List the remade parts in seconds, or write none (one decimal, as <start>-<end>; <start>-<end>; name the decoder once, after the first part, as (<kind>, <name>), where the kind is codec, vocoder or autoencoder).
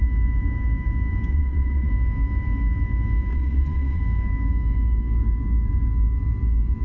1.3-1.9 (vocoder, Vocos); 3.3-4.0